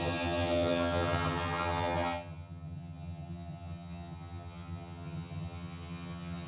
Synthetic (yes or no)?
yes